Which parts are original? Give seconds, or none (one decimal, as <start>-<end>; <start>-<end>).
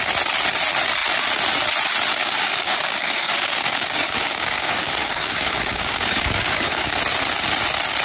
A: 0.0-2.2; 7.0-8.0